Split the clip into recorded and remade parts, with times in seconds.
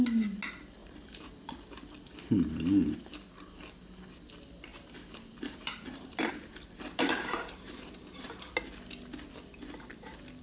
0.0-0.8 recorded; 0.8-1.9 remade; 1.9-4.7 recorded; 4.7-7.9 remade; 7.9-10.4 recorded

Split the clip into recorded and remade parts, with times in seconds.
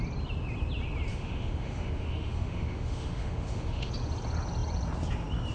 0.0-1.1 recorded; 1.1-3.9 remade; 3.9-5.5 recorded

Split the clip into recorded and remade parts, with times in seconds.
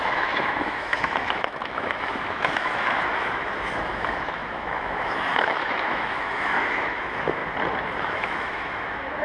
0.0-7.4 remade; 7.4-8.0 recorded; 8.0-9.2 remade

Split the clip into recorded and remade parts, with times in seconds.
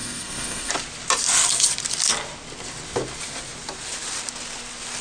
0.0-0.7 remade; 0.7-5.0 recorded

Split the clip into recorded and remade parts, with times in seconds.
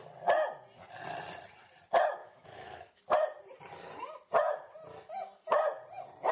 0.0-2.2 recorded; 2.2-3.0 remade; 3.0-6.3 recorded